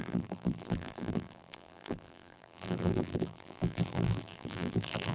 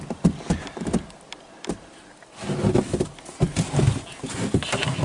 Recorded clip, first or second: second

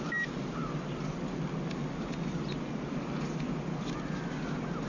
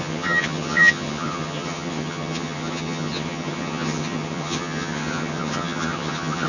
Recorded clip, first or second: first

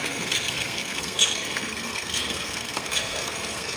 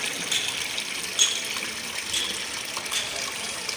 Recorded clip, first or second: second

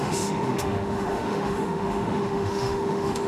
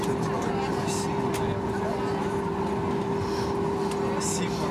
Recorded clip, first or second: second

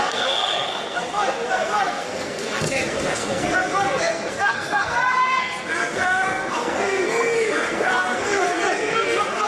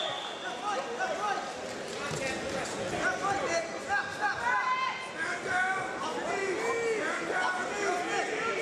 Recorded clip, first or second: second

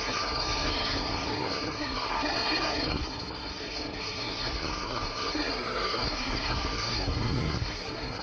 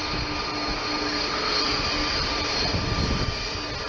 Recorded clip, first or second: second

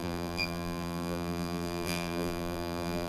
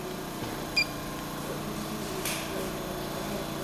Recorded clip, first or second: second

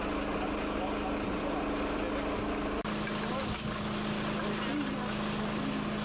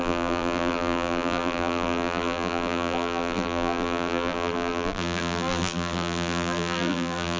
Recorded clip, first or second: first